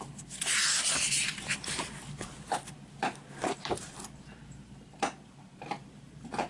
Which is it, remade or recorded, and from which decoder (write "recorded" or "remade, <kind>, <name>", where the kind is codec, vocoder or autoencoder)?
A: remade, vocoder, BigVGAN v2